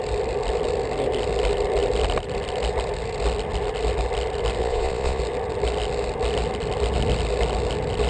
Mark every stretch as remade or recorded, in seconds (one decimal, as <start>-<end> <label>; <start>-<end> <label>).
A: 0.0-4.6 recorded; 4.6-5.2 remade; 5.2-8.1 recorded